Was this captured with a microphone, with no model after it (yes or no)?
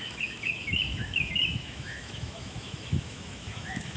no